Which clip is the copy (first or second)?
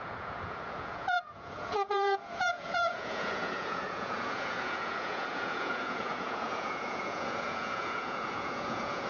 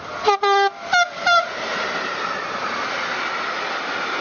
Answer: first